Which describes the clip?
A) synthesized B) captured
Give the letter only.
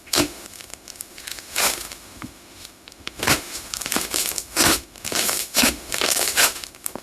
A